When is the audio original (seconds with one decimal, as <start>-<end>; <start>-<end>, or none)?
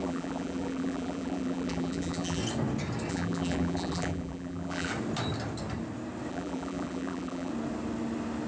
2.4-3.1; 4.9-6.3; 7.5-8.5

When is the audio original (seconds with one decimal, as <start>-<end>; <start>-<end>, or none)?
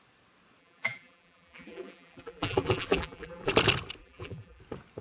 0.0-0.6; 3.5-4.0; 4.6-5.0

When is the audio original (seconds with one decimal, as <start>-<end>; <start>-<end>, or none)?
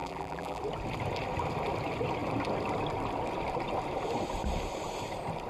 0.6-5.5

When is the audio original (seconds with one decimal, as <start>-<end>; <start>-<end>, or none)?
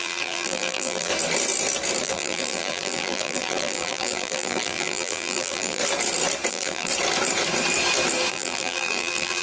1.1-2.0; 5.8-6.5; 6.9-8.3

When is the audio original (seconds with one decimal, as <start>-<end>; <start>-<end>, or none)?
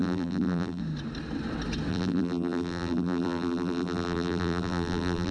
0.8-1.9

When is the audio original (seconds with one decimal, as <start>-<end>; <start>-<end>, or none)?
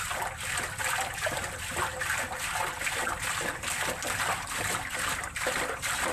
1.4-5.1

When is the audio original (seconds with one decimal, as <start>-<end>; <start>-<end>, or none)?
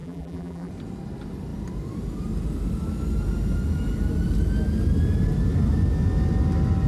0.7-6.9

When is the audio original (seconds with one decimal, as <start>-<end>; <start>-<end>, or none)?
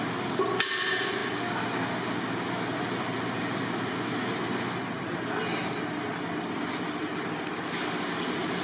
0.0-8.6